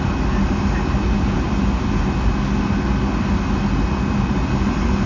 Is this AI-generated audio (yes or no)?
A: no